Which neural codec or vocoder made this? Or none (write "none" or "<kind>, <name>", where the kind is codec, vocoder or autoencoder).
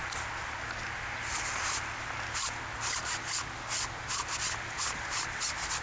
none